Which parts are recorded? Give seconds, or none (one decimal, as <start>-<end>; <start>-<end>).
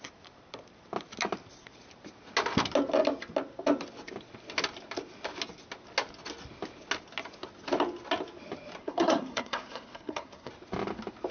0.0-8.8; 10.5-11.3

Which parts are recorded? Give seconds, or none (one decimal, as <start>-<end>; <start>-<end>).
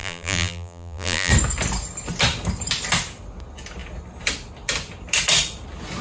1.3-6.0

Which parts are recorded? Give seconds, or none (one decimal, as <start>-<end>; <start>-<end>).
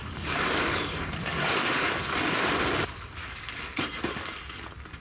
1.9-3.2; 3.8-5.0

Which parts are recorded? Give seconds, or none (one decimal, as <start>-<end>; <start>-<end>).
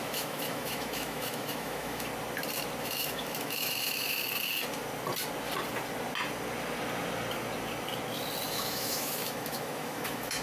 2.1-2.8; 4.2-8.5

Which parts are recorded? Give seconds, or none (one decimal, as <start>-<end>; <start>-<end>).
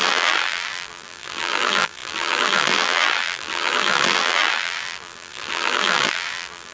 none